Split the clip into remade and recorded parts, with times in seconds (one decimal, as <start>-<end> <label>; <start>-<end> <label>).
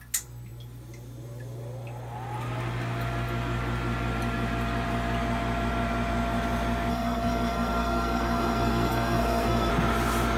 0.0-6.9 recorded; 6.9-9.7 remade; 9.7-10.4 recorded